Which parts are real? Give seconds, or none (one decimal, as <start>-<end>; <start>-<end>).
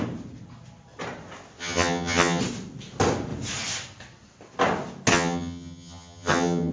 0.0-1.6; 2.4-5.1